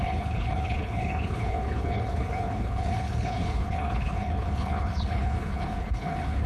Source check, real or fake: fake